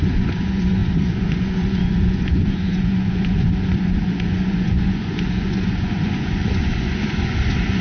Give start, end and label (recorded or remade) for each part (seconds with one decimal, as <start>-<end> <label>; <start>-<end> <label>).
0.0-7.8 remade